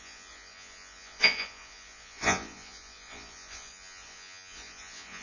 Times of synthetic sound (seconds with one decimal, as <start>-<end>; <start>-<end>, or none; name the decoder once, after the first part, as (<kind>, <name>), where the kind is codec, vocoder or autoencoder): 0.0-5.2 (vocoder, Vocos)